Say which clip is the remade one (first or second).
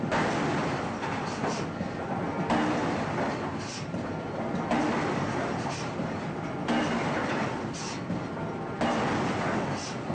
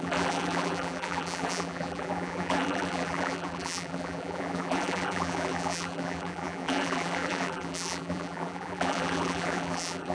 second